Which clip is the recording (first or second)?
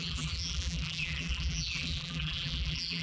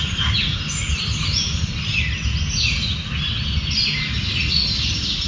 second